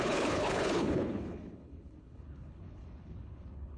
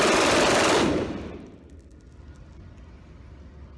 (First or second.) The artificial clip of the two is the first